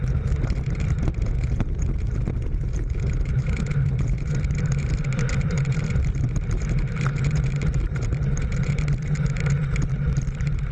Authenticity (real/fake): fake